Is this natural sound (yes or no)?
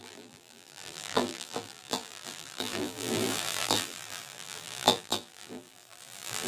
no